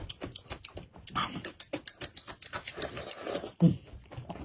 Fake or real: real